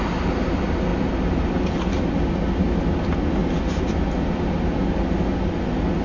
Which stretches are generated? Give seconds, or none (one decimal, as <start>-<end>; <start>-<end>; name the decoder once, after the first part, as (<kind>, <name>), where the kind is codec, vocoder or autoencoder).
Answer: 3.4-4.5 (vocoder, BigVGAN v2)